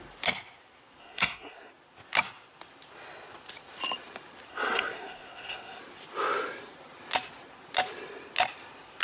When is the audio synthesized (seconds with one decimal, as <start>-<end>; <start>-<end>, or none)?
1.0-1.7; 4.5-5.8